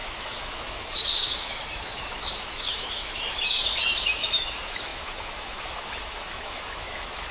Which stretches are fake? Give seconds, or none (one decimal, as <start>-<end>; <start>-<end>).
0.0-7.3